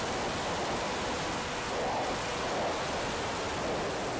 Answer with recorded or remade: recorded